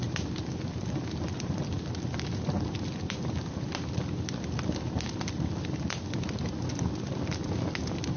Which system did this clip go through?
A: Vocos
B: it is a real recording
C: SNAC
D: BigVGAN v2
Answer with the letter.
B